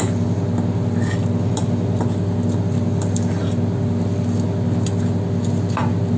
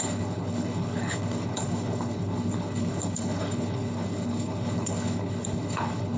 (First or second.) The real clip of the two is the first